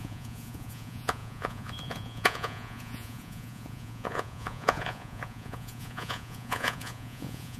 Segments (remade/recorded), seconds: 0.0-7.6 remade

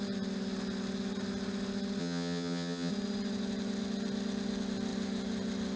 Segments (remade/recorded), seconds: 0.0-2.0 recorded; 2.0-2.9 remade; 2.9-5.8 recorded